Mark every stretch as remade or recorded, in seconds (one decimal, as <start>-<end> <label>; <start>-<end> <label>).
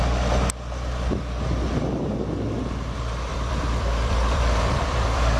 0.0-3.3 recorded; 3.3-5.4 remade